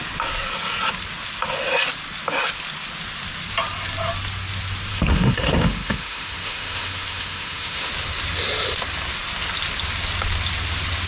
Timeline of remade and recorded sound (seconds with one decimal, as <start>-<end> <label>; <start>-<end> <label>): 0.0-4.9 recorded; 4.9-7.9 remade; 7.9-11.1 recorded